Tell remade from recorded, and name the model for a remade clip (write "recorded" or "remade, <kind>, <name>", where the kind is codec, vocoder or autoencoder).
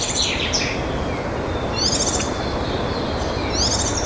recorded